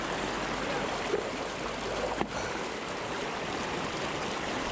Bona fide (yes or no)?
yes